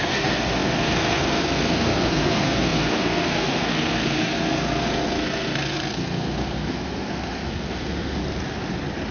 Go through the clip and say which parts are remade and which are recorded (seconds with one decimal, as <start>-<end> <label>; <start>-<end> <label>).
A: 0.0-8.2 remade; 8.2-9.1 recorded